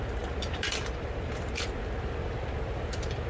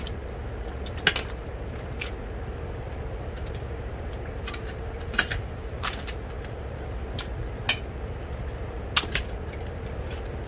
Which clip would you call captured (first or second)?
second